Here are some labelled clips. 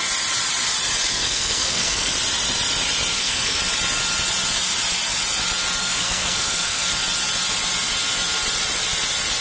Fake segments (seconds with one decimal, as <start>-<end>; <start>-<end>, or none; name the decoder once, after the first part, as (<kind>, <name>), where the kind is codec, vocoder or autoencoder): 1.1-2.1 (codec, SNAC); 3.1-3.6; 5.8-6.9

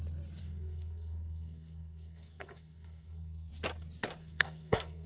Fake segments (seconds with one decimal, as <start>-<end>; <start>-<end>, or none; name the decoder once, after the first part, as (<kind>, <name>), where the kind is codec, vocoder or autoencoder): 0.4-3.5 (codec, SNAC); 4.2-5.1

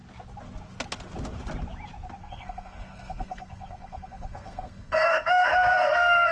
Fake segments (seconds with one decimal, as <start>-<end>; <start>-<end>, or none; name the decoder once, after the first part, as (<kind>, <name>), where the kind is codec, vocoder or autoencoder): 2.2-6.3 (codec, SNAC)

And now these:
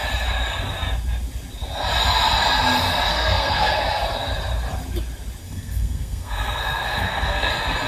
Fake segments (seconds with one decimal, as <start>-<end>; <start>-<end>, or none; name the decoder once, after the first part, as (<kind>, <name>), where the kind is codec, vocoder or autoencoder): 3.1-3.7 (codec, SNAC); 5.4-7.5

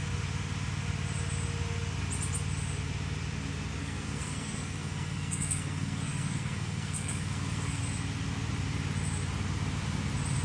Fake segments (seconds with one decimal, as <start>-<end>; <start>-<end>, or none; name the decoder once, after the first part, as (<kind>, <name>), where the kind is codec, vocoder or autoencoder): 3.8-7.8 (codec, SNAC)

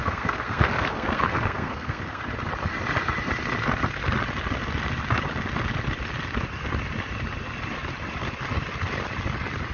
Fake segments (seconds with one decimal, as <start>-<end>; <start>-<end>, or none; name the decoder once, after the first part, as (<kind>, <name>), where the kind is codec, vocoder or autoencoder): 0.0-2.2 (codec, SNAC)